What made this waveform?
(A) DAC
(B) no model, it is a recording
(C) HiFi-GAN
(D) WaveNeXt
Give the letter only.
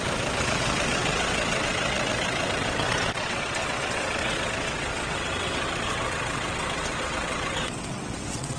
D